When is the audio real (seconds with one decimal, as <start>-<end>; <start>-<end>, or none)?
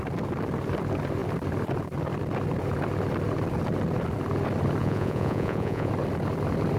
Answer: 0.0-4.8; 5.9-6.8